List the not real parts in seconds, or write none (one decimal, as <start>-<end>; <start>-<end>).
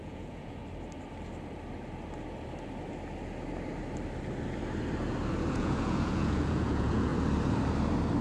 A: 0.0-0.6; 5.5-7.1